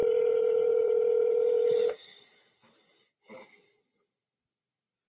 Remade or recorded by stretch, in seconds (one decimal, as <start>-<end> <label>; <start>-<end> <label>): 0.0-1.5 remade; 1.5-5.1 recorded